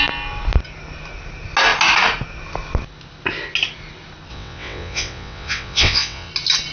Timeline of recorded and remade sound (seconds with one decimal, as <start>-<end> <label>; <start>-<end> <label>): 0.0-4.3 recorded; 4.3-6.3 remade; 6.3-6.7 recorded